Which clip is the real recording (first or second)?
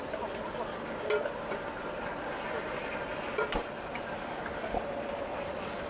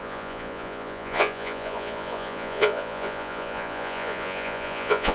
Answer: first